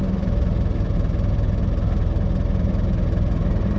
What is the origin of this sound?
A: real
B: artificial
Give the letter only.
A